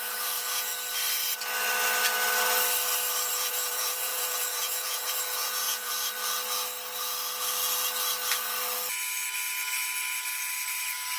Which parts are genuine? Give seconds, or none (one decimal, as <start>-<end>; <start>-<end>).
0.7-3.3; 5.9-11.2